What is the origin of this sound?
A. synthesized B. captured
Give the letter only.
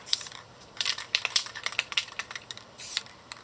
A